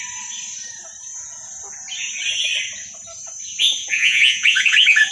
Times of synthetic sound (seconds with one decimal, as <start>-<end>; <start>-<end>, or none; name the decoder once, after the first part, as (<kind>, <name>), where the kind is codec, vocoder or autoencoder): 3.8-5.1 (vocoder, Vocos)